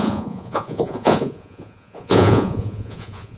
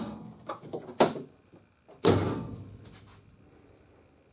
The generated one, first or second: first